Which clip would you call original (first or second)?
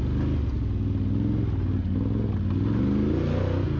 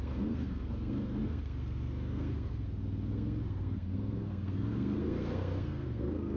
first